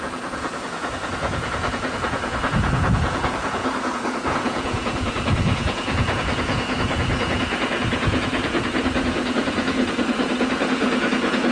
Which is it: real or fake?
fake